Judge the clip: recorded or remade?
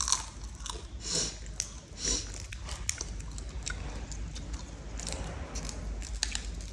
recorded